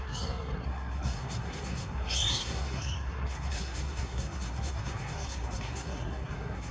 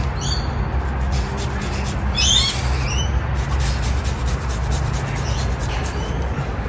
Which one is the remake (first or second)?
first